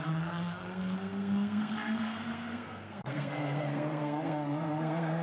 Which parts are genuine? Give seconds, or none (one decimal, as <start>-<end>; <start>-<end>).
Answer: none